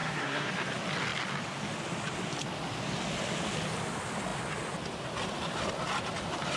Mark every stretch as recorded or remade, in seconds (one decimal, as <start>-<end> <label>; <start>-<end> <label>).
0.0-0.5 remade; 0.5-6.6 recorded